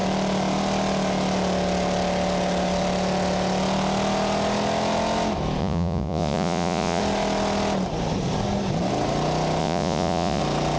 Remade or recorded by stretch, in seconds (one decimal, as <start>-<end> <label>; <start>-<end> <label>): 0.0-5.6 recorded; 5.6-7.0 remade; 7.0-9.6 recorded; 9.6-10.4 remade; 10.4-10.8 recorded